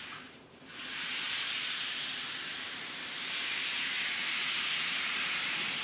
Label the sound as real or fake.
fake